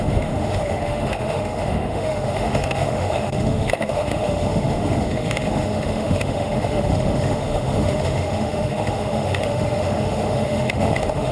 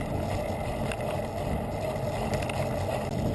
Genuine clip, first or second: second